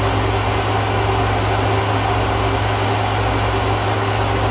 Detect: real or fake real